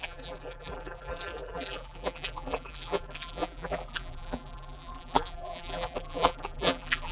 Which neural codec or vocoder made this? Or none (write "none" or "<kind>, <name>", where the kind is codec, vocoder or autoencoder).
vocoder, BigVGAN v2